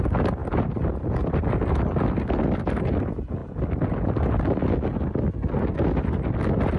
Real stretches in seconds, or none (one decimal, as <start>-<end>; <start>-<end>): 0.0-6.8